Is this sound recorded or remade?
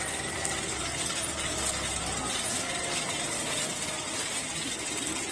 recorded